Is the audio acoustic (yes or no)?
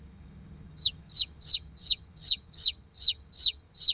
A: no